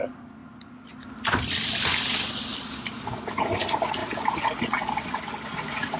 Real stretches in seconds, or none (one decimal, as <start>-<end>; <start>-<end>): 0.0-6.0